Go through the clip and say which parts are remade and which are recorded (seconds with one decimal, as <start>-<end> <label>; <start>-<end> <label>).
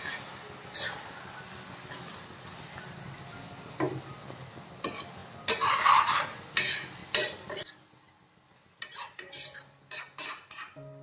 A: 0.0-11.0 recorded